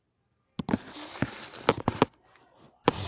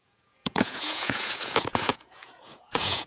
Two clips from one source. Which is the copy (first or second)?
second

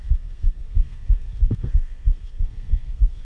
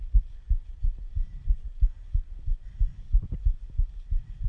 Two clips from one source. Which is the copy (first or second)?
first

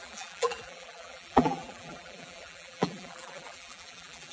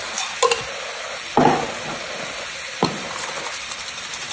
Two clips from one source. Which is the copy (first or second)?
first